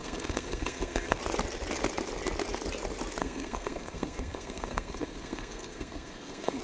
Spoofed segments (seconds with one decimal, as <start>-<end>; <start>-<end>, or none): 0.0-1.2; 3.2-6.6